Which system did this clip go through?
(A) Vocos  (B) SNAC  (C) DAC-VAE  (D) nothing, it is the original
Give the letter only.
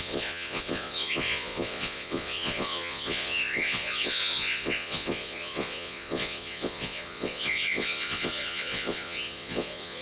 A